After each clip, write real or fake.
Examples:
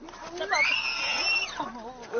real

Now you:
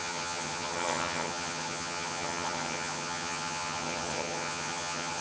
fake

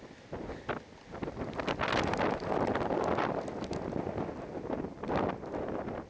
real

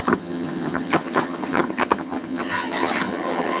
fake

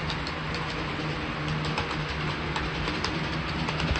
real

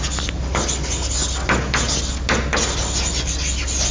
real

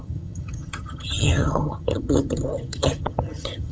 fake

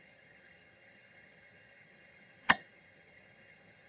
fake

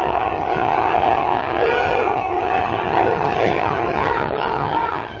fake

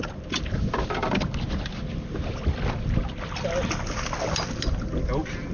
real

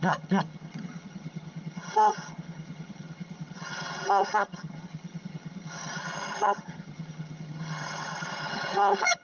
fake